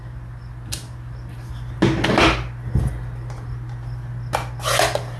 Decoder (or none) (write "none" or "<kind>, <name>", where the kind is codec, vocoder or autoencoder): none